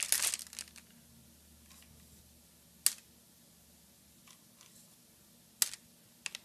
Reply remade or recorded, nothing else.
recorded